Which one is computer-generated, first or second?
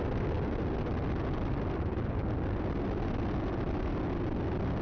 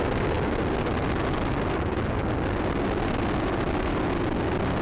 first